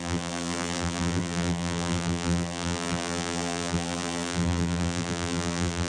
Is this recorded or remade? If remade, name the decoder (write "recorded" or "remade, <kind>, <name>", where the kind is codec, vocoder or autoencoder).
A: remade, vocoder, BigVGAN v2